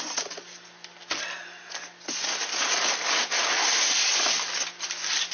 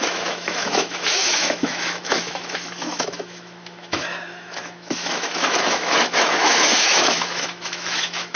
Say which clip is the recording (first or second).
first